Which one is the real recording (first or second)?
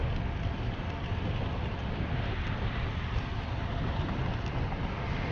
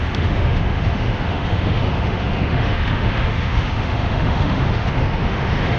first